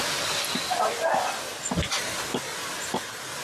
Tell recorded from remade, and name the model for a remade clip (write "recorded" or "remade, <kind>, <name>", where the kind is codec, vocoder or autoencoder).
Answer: recorded